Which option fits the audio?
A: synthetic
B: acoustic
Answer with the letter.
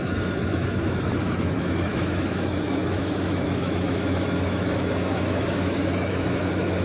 A